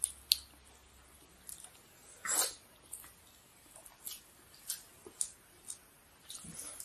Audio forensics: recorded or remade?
recorded